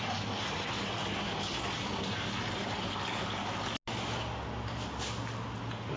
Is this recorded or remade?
recorded